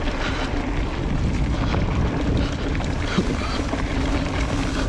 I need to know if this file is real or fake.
real